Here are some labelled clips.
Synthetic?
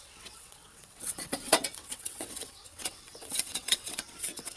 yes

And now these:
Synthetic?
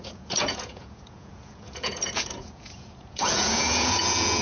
yes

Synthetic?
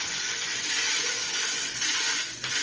yes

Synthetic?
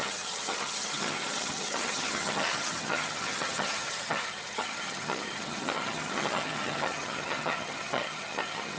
yes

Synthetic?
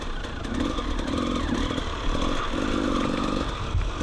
yes